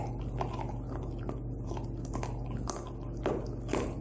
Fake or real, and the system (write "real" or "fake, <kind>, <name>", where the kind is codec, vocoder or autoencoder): real